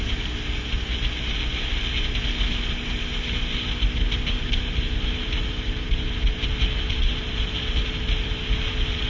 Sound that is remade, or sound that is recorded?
recorded